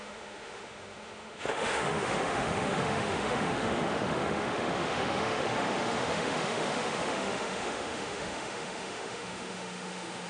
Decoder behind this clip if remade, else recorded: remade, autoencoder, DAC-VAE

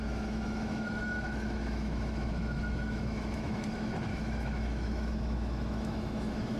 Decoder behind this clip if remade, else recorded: remade, autoencoder, DAC-VAE